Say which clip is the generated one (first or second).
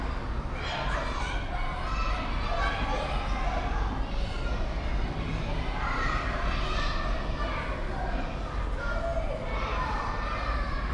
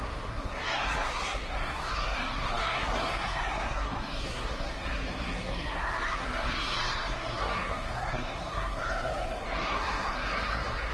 second